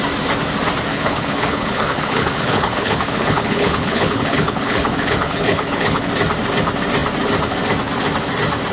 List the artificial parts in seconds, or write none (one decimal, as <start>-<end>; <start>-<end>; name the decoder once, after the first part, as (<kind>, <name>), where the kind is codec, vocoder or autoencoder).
0.9-6.1 (codec, HILCodec)